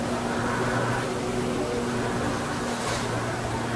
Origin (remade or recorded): recorded